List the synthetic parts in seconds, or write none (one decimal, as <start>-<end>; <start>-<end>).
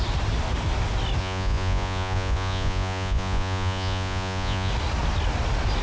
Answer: 1.2-4.7